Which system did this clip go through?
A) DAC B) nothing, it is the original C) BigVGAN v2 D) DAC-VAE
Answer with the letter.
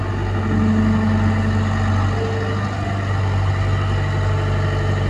B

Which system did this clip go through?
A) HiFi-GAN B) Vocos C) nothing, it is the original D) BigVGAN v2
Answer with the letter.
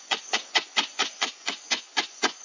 B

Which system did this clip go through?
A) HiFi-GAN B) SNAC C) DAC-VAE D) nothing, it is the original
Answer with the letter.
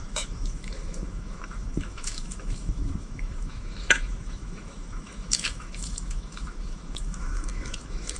C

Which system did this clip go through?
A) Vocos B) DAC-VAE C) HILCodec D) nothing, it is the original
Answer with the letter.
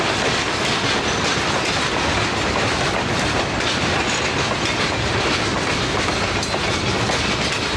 D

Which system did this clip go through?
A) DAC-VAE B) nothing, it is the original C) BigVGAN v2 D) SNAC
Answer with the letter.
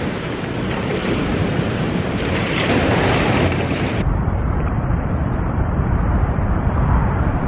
C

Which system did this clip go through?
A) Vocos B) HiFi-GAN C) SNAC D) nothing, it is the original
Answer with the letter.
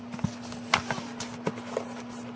D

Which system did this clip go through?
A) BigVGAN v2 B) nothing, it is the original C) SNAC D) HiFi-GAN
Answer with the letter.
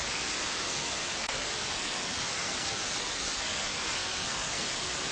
C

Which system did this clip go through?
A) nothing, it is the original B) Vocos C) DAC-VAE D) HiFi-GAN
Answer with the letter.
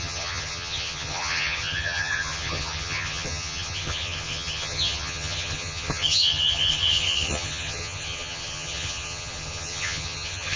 D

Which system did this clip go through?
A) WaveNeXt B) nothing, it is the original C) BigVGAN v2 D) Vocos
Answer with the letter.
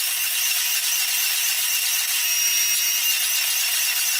C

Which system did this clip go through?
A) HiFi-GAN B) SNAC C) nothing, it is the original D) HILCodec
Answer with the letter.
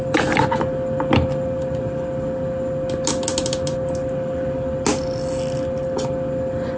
C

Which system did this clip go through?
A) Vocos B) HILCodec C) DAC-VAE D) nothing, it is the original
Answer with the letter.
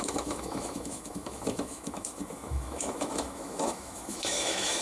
C